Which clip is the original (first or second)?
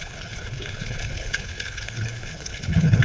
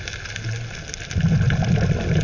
second